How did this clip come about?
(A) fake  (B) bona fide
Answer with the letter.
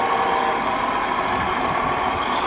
B